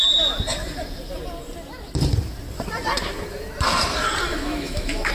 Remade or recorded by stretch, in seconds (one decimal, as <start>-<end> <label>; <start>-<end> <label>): 0.0-4.3 recorded; 4.3-5.1 remade